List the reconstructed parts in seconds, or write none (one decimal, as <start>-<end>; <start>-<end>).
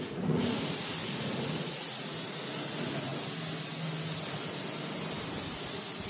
0.0-3.1